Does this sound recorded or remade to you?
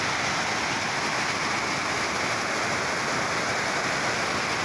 recorded